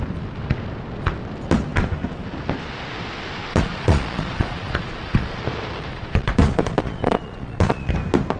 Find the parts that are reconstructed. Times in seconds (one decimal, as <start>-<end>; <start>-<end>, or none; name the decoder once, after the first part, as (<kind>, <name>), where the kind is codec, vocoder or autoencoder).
3.5-5.4 (vocoder, Vocos); 5.9-7.9